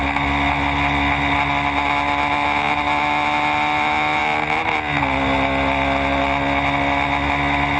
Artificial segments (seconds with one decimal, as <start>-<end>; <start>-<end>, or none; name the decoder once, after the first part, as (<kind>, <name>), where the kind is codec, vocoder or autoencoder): none